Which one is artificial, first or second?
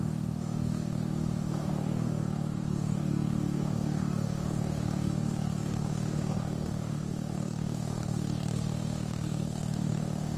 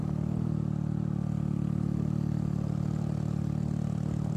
first